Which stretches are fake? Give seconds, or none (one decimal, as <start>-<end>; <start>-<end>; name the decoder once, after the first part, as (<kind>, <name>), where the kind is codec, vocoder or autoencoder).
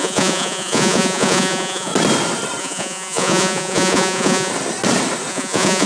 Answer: 0.0-1.9 (vocoder, Vocos); 2.6-4.5; 5.3-5.9